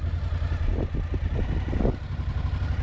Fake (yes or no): no